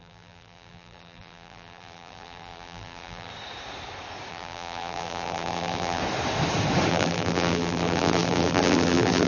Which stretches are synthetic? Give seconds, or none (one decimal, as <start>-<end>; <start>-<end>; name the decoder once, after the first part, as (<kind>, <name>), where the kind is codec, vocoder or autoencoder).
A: 0.0-3.3 (vocoder, BigVGAN v2); 4.3-6.0; 6.9-9.3